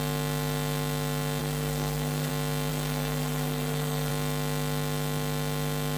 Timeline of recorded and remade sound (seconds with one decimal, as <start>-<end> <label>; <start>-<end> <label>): 0.0-1.4 recorded; 1.4-2.3 remade; 2.3-2.7 recorded; 2.7-4.1 remade; 4.1-6.0 recorded